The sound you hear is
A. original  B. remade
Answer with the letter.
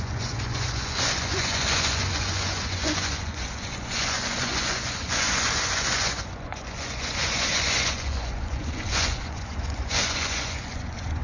B